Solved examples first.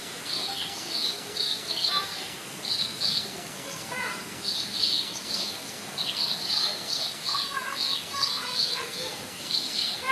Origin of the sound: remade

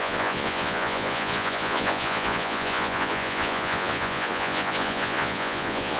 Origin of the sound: remade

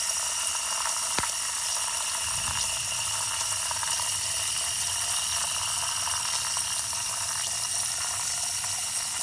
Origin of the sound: recorded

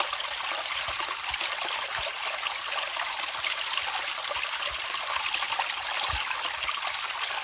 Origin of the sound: recorded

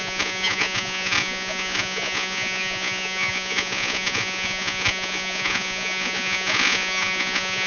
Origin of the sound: remade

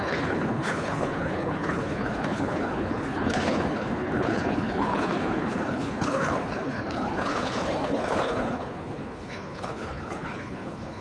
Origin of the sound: remade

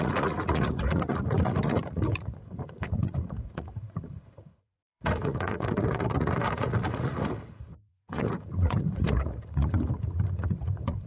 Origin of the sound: remade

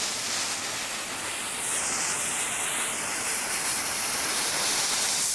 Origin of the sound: recorded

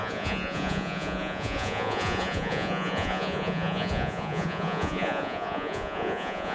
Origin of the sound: remade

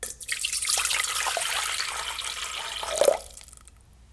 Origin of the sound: recorded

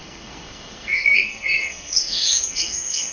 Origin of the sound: remade